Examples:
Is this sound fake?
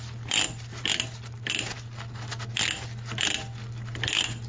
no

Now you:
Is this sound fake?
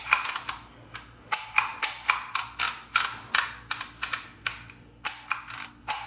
no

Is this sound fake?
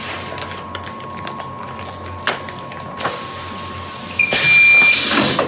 no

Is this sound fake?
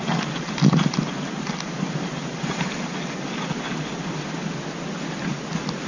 no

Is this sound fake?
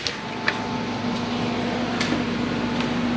no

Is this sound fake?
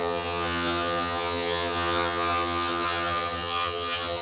yes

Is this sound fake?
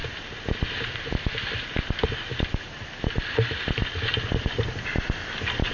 no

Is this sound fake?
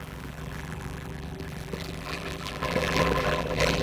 yes